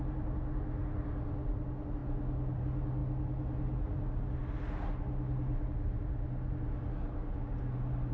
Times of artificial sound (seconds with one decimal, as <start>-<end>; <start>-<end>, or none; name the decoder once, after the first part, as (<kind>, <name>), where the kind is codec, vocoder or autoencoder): none